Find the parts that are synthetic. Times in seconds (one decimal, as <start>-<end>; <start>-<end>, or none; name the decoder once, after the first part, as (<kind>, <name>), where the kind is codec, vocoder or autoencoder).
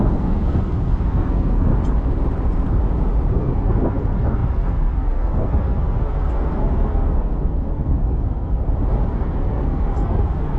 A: 0.0-1.7 (codec, SNAC); 3.3-8.6; 9.1-10.6